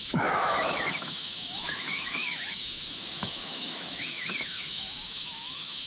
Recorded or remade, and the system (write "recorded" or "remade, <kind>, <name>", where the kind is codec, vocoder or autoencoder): remade, autoencoder, DAC-VAE